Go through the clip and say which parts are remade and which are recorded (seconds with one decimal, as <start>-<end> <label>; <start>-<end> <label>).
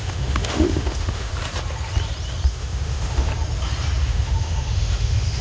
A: 0.0-1.3 remade; 1.3-2.5 recorded; 2.5-3.3 remade; 3.3-4.0 recorded; 4.0-5.4 remade